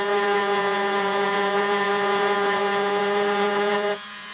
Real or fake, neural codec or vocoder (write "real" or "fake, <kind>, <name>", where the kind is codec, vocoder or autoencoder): fake, vocoder, Vocos